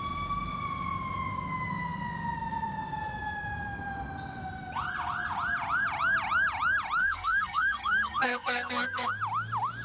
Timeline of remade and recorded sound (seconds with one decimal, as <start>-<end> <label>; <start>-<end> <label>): 0.0-7.0 recorded; 7.0-9.1 remade; 9.1-9.8 recorded